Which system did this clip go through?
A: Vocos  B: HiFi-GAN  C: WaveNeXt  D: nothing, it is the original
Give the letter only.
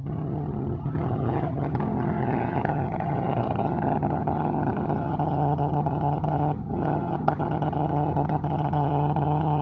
B